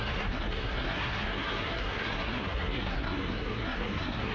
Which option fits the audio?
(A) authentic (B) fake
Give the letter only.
B